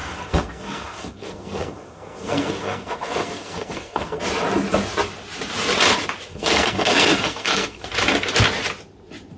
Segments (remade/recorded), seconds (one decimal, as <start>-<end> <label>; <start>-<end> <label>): 0.0-4.2 remade; 4.2-6.3 recorded; 6.3-7.9 remade; 7.9-9.4 recorded